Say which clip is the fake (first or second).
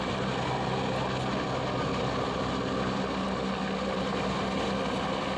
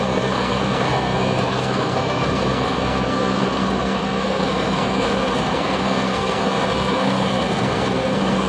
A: second